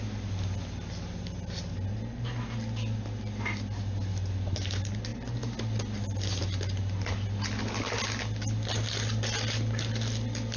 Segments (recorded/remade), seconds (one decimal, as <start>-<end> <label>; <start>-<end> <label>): 0.0-10.6 recorded